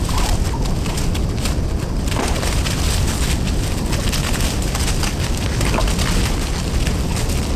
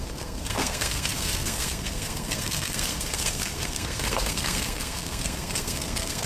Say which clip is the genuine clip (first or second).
first